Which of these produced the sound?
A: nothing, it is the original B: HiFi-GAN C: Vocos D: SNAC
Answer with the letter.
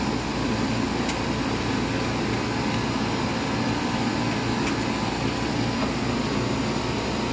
A